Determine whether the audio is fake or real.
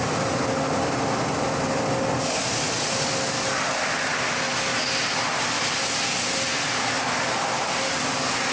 real